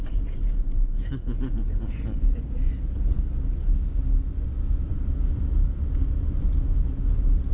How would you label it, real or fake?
real